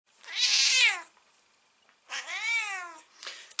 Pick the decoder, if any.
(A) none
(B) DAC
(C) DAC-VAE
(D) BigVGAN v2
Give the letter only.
A